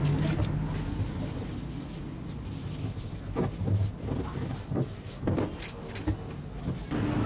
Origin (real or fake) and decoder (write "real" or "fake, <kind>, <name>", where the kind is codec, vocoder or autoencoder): real